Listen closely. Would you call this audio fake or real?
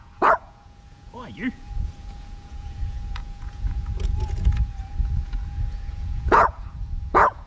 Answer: fake